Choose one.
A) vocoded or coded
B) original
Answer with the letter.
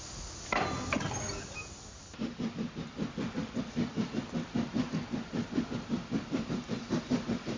B